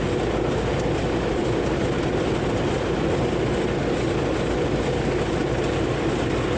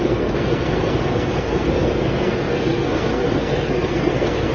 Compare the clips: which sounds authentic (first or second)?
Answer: first